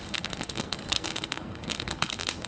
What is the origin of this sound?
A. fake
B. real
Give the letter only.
A